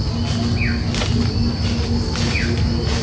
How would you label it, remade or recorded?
recorded